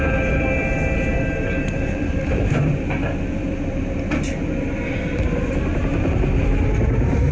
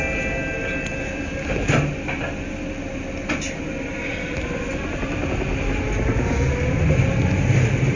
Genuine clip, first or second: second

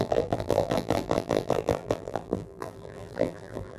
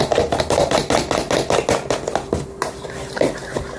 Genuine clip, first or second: second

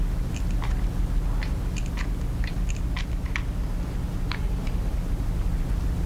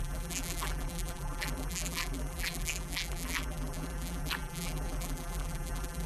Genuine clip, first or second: first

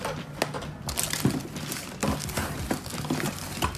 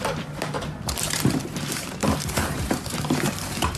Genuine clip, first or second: first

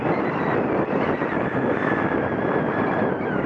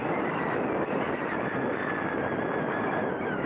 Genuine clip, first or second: second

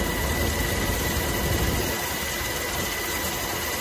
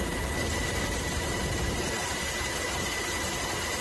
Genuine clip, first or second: first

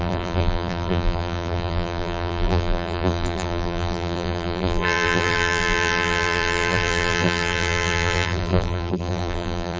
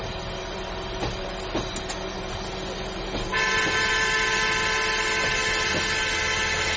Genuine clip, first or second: second